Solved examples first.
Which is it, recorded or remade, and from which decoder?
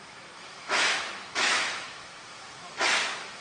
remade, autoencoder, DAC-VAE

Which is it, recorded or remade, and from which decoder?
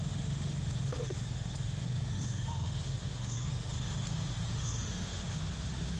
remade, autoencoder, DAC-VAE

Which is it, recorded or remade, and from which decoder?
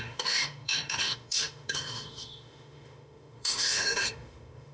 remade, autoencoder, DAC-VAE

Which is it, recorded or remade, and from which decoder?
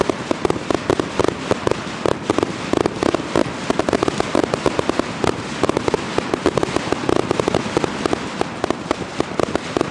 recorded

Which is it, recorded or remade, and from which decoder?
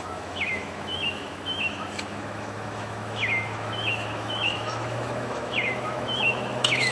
remade, autoencoder, DAC-VAE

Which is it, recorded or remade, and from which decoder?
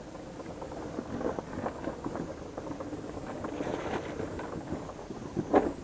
recorded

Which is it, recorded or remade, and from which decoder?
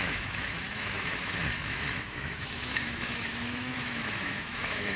remade, autoencoder, DAC-VAE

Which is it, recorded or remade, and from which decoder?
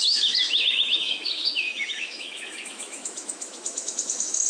remade, autoencoder, DAC-VAE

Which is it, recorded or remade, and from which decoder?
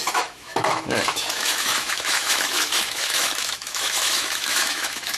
remade, autoencoder, DAC-VAE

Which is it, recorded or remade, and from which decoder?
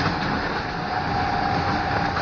recorded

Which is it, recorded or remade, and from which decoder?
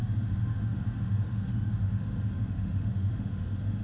remade, autoencoder, DAC-VAE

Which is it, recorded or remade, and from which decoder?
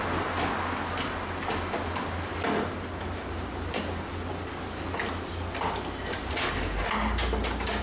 recorded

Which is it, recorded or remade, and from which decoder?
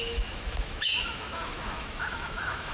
remade, autoencoder, DAC-VAE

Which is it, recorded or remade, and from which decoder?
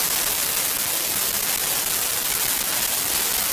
recorded